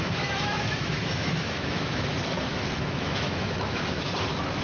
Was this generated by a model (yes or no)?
yes